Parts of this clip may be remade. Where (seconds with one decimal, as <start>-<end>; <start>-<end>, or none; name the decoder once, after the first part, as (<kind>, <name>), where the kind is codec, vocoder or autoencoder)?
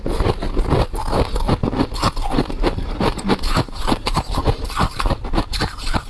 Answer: 2.2-6.1 (vocoder, BigVGAN v2)